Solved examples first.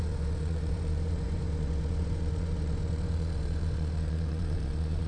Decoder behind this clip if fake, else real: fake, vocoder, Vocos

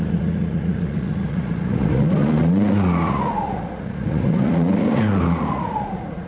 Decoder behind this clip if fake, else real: fake, vocoder, Vocos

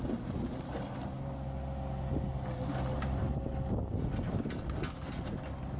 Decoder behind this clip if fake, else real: real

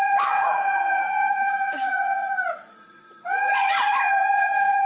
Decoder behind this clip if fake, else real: fake, vocoder, Vocos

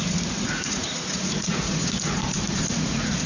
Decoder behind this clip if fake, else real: fake, vocoder, Vocos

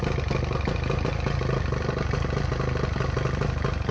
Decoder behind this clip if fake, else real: real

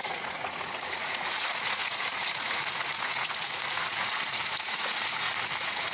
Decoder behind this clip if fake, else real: fake, vocoder, Vocos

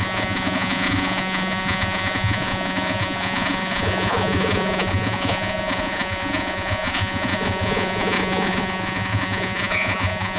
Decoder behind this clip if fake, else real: fake, vocoder, Vocos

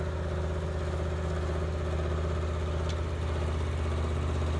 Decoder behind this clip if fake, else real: real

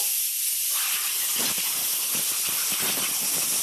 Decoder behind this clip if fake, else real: real